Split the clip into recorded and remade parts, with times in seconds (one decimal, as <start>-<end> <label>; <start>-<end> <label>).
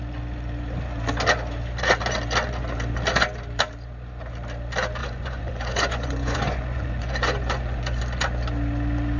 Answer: 0.0-5.0 recorded; 5.0-8.0 remade; 8.0-9.2 recorded